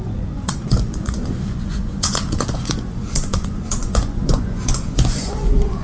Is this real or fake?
fake